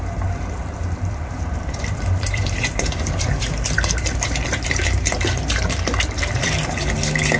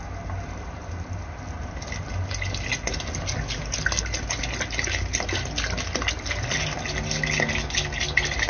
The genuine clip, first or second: second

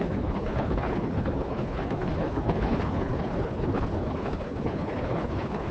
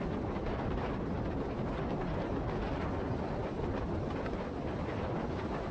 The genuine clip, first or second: second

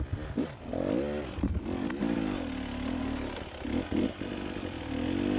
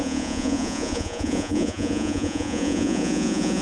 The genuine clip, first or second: first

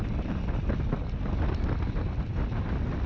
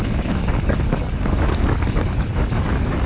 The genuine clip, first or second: first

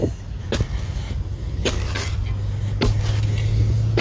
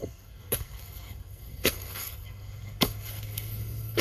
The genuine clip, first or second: first